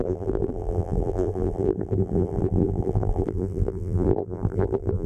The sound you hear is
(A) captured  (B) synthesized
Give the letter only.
B